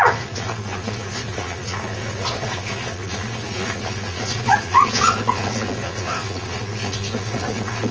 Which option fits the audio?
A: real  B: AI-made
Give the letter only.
B